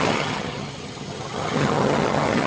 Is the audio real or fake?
fake